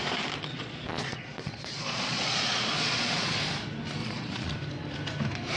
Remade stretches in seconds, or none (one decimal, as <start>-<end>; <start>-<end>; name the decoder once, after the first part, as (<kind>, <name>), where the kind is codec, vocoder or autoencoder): 0.5-3.4 (vocoder, Vocos); 4.0-4.5